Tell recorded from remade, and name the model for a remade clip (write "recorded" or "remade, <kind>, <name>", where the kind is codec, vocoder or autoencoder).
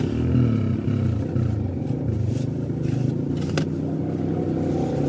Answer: recorded